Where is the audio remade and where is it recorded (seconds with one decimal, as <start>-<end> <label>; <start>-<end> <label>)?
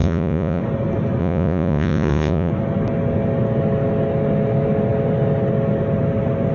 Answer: 0.0-0.6 remade; 0.6-1.2 recorded; 1.2-2.5 remade; 2.5-6.5 recorded